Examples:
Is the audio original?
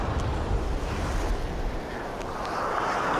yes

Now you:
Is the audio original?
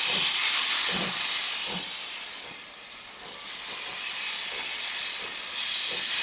yes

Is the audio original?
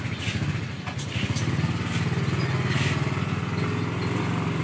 yes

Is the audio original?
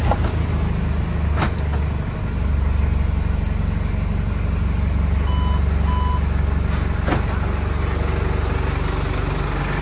yes